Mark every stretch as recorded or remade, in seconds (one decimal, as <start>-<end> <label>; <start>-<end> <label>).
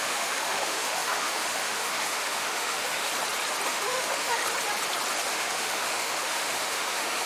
0.0-3.1 remade; 3.1-3.7 recorded; 3.7-4.4 remade; 4.4-5.3 recorded; 5.3-7.3 remade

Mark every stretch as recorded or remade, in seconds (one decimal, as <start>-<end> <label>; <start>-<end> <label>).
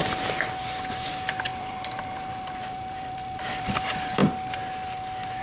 0.0-0.9 recorded; 0.9-4.2 remade; 4.2-5.4 recorded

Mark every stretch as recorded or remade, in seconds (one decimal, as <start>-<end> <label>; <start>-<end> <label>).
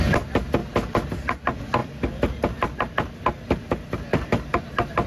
0.0-5.1 recorded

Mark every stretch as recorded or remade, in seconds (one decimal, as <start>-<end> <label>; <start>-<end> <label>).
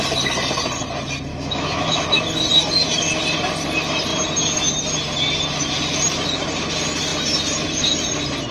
0.0-1.3 recorded; 1.3-2.2 remade; 2.2-8.5 recorded